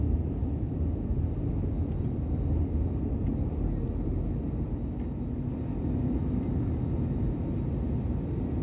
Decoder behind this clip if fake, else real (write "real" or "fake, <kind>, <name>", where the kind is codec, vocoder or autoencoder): real